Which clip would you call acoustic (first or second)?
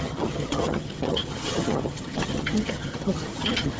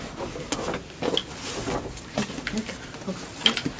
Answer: second